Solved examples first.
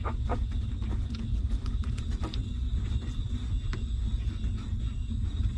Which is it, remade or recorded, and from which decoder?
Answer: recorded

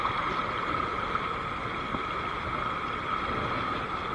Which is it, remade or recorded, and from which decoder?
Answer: recorded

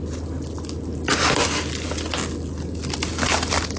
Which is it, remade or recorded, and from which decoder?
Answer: recorded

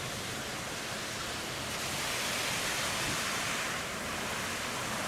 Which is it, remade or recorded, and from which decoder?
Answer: recorded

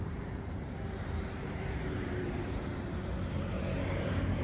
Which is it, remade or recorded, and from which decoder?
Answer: remade, vocoder, BigVGAN v2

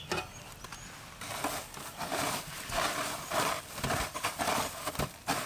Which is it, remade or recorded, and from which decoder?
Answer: recorded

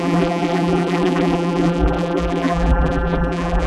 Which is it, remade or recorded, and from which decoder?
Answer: remade, vocoder, BigVGAN v2